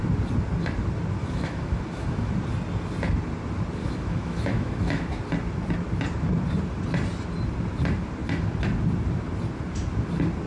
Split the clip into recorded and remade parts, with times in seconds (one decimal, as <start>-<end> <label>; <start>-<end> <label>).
0.0-1.2 recorded; 1.2-2.3 remade; 2.3-3.8 recorded; 3.8-5.2 remade; 5.2-10.5 recorded